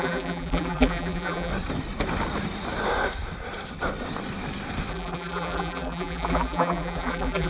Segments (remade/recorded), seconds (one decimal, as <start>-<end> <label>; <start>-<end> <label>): 0.0-1.5 remade; 1.5-4.9 recorded; 4.9-7.5 remade